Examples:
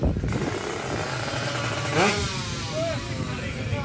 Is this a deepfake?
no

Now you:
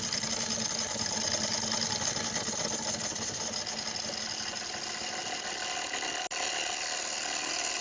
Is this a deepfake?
no